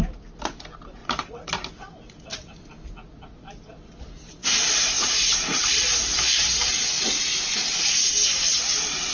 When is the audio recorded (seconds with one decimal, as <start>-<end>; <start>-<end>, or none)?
0.0-1.0; 2.6-5.5; 6.7-9.1